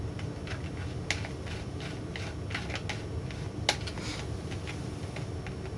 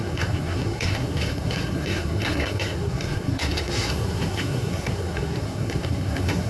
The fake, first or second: second